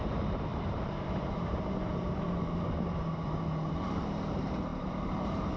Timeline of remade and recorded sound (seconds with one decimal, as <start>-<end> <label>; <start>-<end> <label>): 0.0-5.6 remade